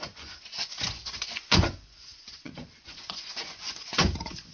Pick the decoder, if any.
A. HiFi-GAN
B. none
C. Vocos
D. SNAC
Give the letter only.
C